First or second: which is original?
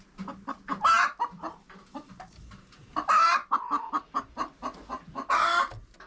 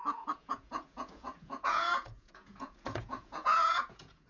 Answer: first